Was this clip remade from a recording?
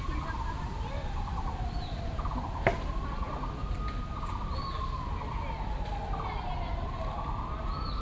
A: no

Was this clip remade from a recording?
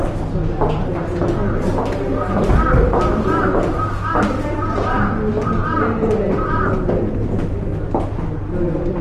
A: no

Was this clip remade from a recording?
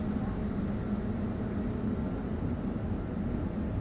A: no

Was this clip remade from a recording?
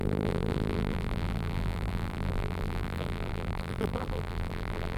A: yes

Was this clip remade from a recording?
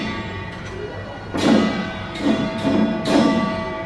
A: yes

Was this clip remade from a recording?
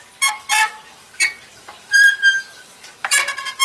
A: yes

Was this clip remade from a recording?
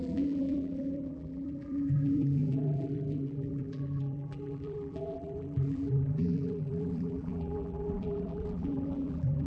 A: yes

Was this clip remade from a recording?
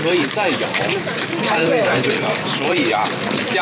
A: yes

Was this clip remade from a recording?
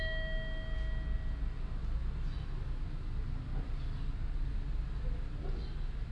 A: no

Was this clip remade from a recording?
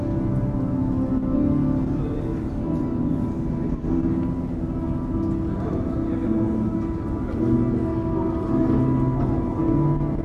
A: no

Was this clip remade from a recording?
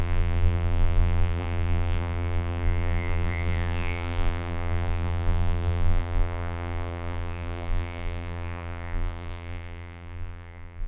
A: yes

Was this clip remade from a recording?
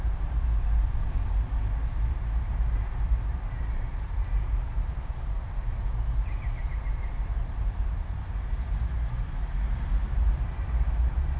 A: yes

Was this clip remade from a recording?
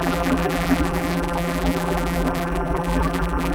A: yes